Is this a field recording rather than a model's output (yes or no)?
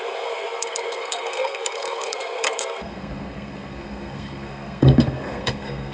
no